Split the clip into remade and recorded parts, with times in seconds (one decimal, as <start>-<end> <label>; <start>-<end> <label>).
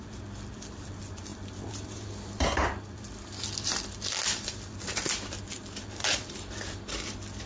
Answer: 0.0-7.5 remade